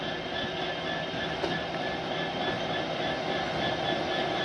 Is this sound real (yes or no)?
yes